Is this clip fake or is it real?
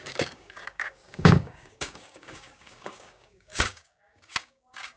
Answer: fake